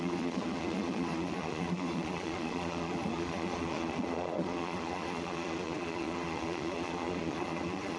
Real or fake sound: fake